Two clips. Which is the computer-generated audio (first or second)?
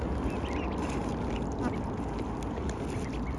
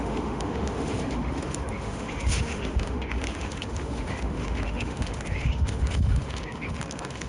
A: second